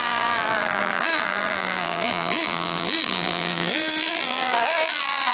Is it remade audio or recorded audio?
remade